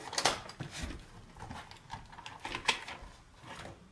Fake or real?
real